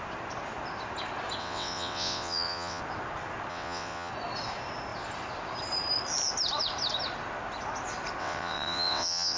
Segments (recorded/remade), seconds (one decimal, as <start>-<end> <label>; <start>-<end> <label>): 0.0-1.4 recorded; 1.4-2.8 remade; 2.8-3.5 recorded; 3.5-4.1 remade; 4.1-8.2 recorded; 8.2-9.4 remade